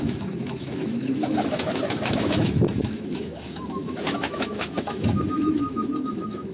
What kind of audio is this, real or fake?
fake